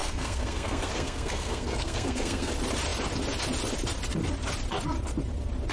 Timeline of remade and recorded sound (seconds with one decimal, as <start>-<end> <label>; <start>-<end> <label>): 0.0-2.5 remade; 2.5-5.7 recorded